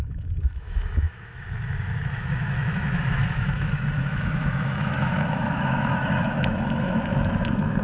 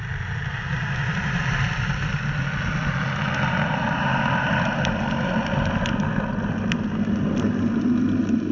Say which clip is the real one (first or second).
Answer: second